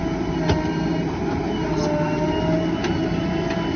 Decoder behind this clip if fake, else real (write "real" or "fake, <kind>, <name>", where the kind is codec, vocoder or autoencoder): real